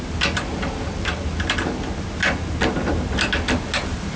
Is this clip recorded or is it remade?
recorded